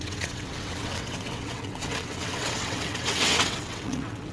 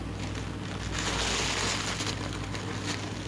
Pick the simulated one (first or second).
first